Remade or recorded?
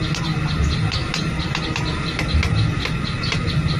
recorded